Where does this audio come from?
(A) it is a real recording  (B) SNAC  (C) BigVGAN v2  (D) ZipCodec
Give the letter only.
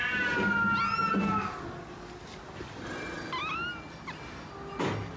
A